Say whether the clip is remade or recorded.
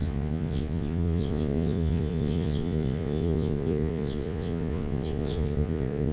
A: remade